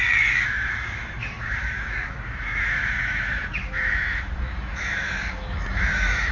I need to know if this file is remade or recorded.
remade